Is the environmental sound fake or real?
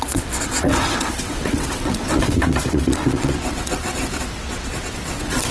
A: fake